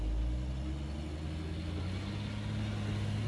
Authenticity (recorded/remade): recorded